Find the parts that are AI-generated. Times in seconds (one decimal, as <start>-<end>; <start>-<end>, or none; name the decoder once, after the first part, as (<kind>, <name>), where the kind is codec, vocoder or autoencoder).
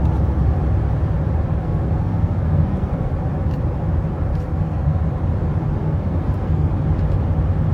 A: 1.6-3.1 (codec, SNAC); 4.3-5.0; 5.8-6.7